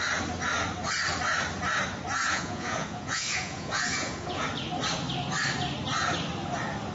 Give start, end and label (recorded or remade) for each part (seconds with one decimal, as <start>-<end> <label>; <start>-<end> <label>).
0.0-2.3 recorded; 2.3-4.4 remade; 4.4-6.9 recorded